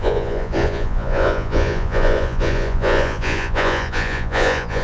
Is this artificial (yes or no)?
yes